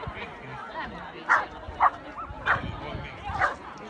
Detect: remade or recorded recorded